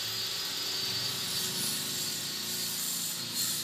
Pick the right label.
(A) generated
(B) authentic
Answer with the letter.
B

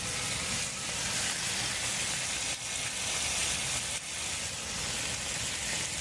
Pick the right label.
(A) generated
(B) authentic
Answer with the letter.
B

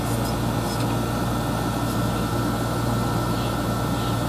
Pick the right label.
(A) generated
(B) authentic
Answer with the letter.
B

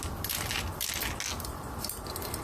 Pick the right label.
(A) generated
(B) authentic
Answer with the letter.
B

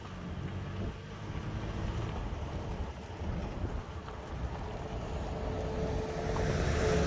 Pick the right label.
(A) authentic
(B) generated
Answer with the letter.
A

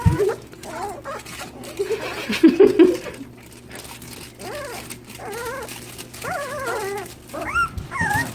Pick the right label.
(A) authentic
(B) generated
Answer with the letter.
A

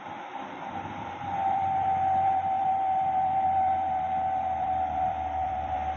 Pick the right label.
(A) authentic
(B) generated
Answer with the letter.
B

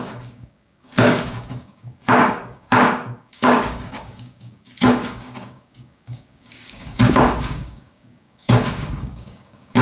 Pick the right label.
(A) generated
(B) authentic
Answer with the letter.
A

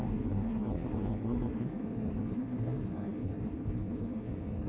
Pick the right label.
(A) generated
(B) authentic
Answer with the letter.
A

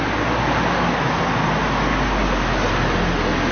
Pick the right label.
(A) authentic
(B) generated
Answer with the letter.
A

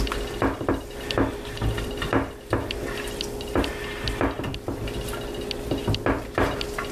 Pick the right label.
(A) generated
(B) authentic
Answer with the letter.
B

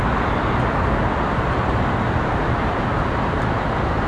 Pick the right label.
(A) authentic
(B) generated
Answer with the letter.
A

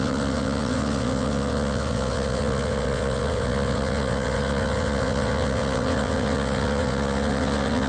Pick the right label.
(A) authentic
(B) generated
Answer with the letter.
B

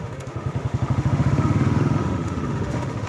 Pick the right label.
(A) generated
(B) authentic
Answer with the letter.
A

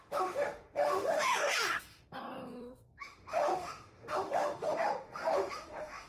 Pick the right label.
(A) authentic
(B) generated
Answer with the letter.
B